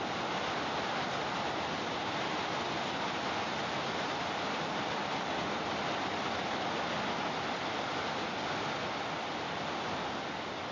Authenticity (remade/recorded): recorded